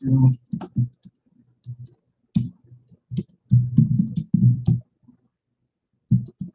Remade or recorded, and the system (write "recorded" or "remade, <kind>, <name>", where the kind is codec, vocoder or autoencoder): recorded